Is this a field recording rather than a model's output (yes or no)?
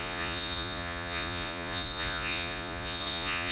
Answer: no